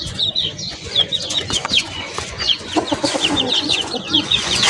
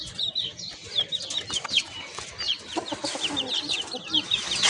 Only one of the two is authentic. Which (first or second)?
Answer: second